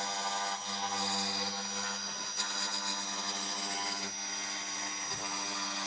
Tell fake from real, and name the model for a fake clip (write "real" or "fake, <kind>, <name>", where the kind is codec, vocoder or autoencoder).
real